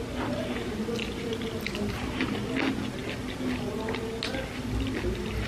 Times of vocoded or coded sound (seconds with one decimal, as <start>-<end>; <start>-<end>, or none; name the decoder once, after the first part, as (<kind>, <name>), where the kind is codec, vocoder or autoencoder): none